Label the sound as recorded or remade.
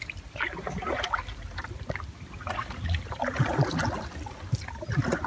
recorded